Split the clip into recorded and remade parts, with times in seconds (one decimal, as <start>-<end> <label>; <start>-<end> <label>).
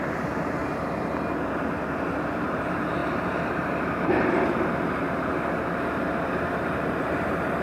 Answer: 0.0-0.6 remade; 0.6-2.2 recorded; 2.2-7.6 remade